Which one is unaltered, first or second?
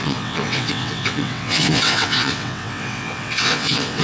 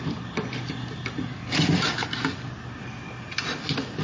second